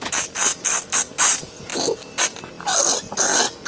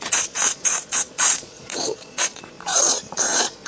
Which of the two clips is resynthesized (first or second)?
second